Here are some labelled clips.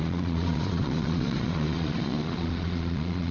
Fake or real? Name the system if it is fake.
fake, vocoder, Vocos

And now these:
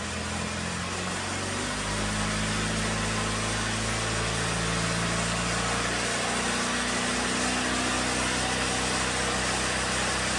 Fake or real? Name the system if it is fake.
real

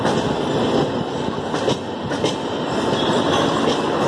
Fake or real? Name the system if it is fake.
real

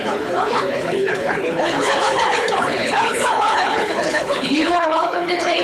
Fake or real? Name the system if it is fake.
fake, codec, HILCodec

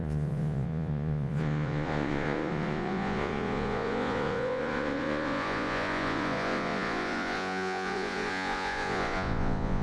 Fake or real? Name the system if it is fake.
fake, vocoder, Vocos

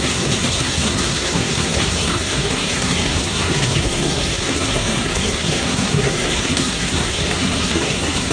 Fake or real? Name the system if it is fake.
fake, codec, SNAC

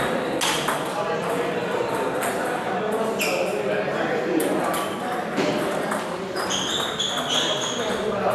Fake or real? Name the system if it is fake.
real